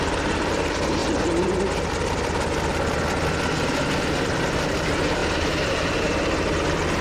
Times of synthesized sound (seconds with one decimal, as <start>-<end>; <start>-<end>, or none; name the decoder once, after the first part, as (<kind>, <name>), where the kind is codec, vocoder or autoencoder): 0.0-1.0 (vocoder, BigVGAN v2); 4.4-7.0